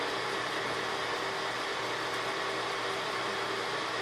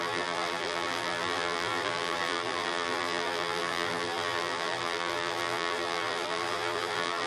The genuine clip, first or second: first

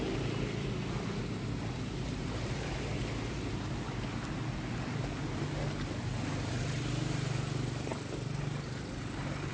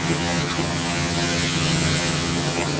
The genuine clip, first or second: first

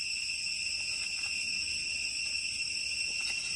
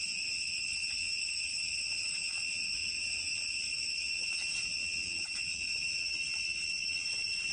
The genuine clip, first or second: first